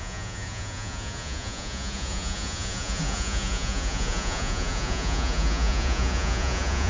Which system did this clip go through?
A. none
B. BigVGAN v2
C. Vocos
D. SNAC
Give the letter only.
C